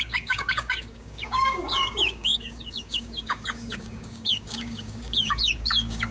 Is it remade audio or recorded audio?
remade